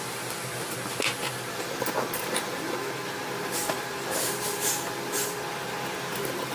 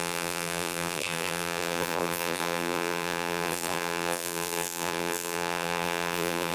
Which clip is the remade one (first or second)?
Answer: second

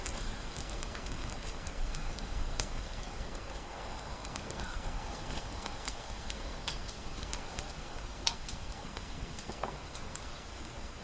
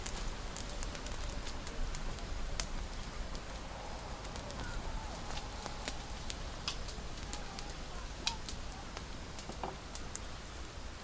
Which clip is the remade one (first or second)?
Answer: first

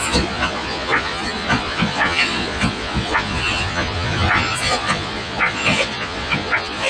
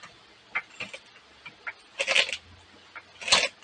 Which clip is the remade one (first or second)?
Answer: first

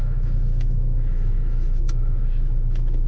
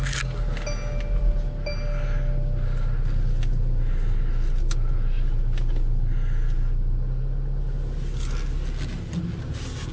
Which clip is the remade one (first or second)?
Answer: first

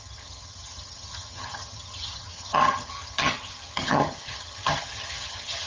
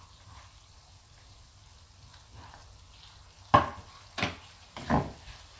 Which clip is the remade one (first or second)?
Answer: first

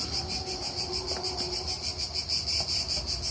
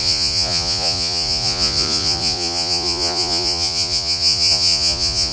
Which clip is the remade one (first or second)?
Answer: second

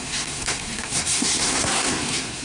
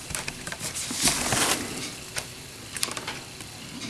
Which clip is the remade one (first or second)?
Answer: first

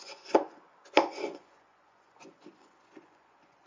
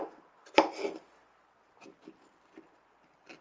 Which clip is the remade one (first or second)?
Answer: first